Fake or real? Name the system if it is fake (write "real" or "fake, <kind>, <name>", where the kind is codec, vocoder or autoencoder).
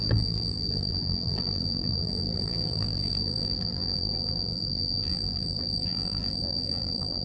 fake, vocoder, BigVGAN v2